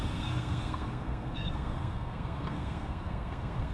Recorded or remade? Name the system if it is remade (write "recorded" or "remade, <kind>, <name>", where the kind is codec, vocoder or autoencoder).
remade, codec, SNAC